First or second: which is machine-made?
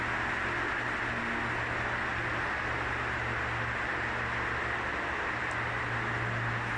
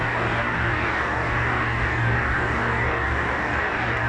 second